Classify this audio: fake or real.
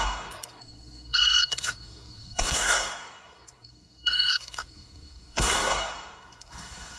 fake